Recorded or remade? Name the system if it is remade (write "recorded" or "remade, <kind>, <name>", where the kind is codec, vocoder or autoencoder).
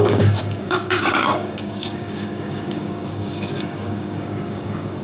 remade, codec, DAC